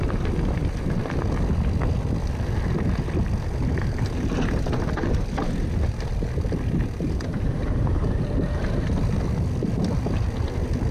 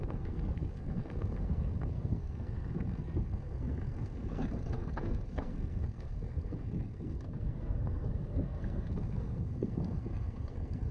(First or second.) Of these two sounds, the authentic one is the first